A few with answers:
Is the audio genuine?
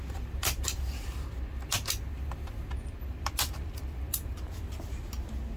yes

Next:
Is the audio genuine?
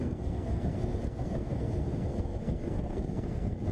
no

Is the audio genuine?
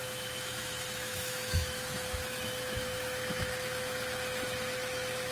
no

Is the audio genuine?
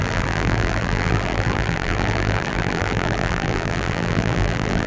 no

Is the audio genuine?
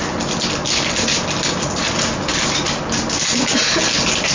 yes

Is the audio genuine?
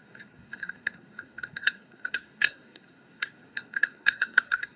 no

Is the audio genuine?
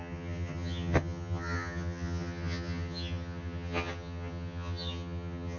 no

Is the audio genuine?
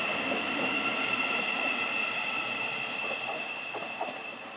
no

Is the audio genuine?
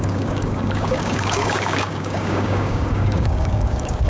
no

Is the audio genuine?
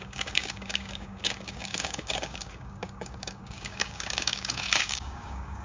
no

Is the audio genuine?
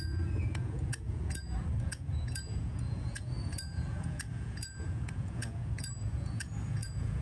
no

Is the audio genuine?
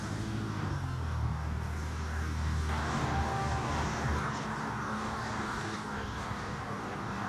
no